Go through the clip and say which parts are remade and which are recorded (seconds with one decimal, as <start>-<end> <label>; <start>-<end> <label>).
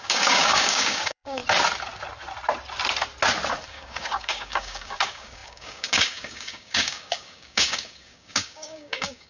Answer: 0.0-1.4 remade; 1.4-3.7 recorded; 3.7-9.3 remade